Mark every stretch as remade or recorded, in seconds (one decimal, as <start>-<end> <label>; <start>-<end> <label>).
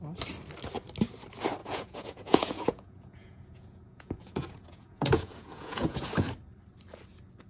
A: 0.0-1.6 recorded; 1.6-6.1 remade; 6.1-7.5 recorded